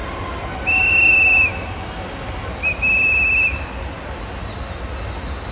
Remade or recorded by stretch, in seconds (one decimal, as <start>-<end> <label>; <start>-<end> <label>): 0.0-5.5 recorded